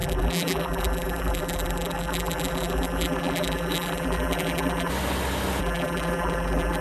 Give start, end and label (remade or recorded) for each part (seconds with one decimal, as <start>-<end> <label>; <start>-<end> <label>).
0.0-4.9 remade; 4.9-5.6 recorded; 5.6-6.8 remade